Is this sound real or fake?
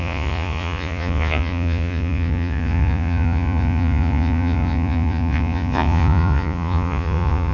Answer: fake